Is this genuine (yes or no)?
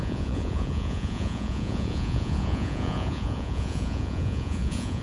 no